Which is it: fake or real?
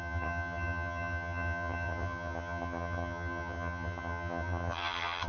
fake